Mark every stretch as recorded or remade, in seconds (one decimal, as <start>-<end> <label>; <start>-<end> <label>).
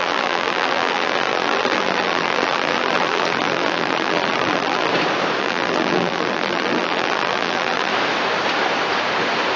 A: 0.0-4.9 remade; 4.9-5.4 recorded; 5.4-7.9 remade; 7.9-9.6 recorded